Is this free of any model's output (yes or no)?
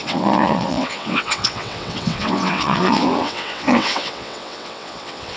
no